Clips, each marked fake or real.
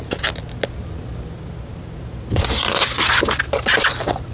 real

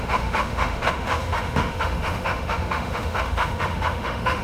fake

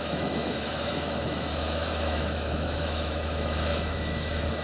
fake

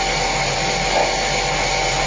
real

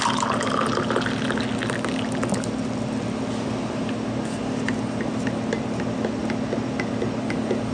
real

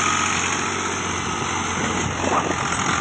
real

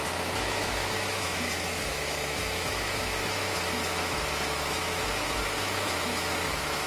fake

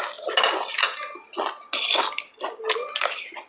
real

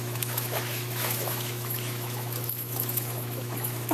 fake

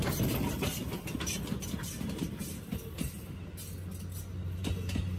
real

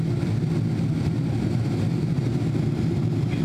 real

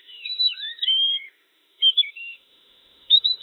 fake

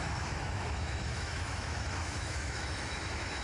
fake